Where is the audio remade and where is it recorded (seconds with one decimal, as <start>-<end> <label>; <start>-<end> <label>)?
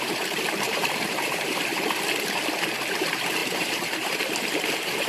0.0-1.7 remade; 1.7-3.0 recorded; 3.0-5.1 remade